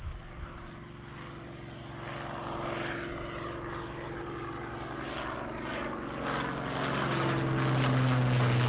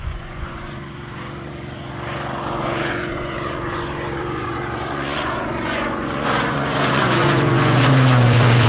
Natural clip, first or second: first